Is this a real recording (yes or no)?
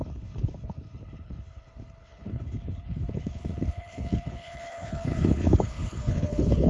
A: no